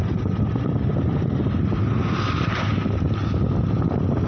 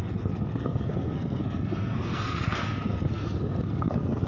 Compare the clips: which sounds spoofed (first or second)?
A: second